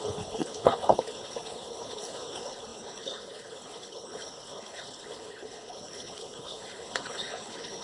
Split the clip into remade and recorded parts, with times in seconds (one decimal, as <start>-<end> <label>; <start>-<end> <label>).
0.0-7.8 remade